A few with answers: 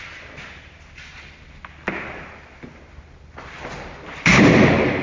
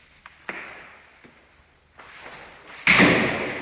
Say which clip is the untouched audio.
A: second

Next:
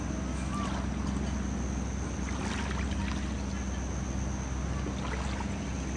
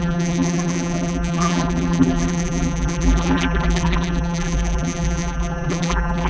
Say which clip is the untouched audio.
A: first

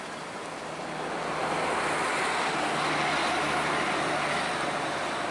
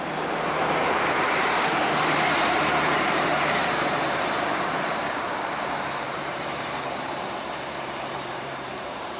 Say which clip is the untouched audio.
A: first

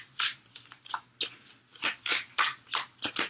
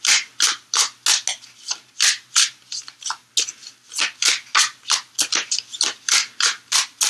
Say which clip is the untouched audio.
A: second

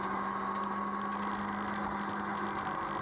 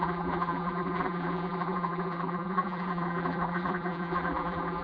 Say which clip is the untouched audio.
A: first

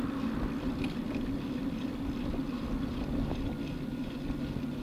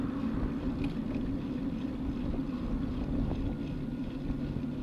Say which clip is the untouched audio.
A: second